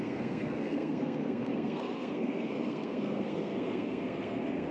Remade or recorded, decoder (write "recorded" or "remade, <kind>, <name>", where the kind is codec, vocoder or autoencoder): remade, codec, SNAC